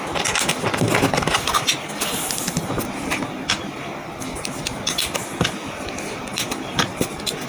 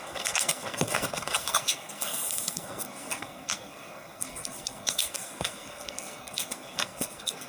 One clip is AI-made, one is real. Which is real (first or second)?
first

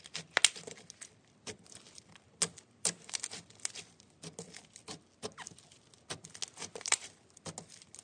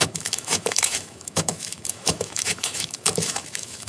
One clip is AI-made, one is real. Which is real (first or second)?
first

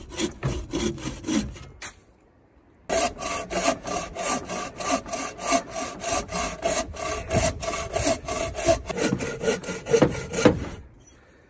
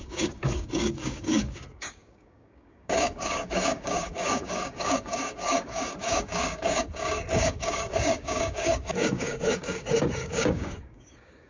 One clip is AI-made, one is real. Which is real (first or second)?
first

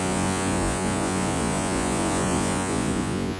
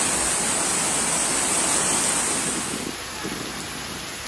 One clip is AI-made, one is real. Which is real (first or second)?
second